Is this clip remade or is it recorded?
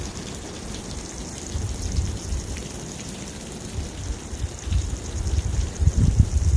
remade